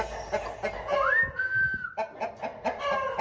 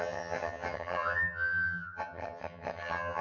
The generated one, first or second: second